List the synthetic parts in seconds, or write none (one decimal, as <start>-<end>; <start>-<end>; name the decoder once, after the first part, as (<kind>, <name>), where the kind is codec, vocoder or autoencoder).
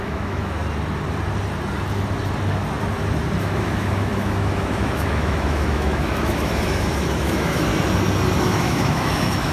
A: 0.0-0.6 (autoencoder, DAC-VAE); 3.4-7.7; 8.4-9.5